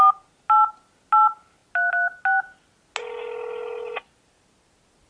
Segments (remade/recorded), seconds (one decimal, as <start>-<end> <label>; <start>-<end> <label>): 0.0-5.1 recorded